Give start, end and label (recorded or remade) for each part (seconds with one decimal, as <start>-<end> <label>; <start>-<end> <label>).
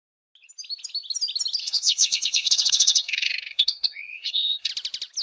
0.0-1.6 recorded; 1.6-4.7 remade; 4.7-5.2 recorded